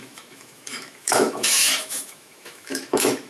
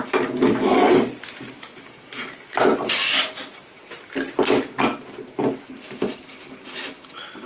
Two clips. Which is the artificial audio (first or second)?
first